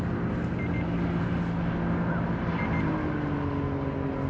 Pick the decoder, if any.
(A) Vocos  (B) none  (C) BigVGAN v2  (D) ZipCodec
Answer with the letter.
B